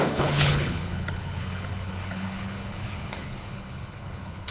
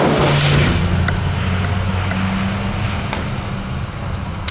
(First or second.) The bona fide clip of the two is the second